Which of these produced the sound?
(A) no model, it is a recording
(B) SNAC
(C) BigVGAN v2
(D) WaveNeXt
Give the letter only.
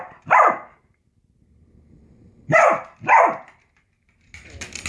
A